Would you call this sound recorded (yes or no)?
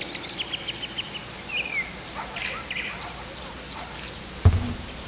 yes